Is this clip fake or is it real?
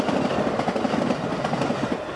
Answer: real